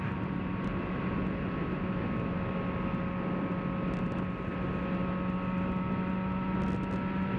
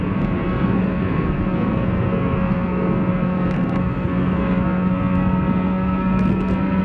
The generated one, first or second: second